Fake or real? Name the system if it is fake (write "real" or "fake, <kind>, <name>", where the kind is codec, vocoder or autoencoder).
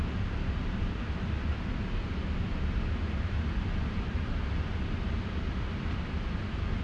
real